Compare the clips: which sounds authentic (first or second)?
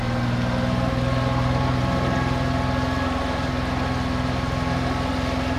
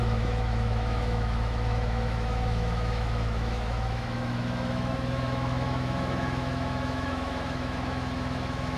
first